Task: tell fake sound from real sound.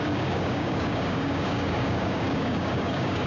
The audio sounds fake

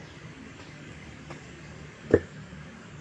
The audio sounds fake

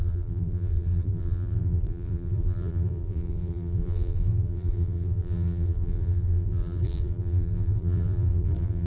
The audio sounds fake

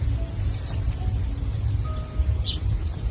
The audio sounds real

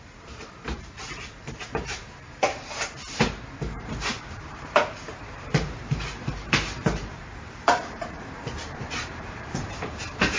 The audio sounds fake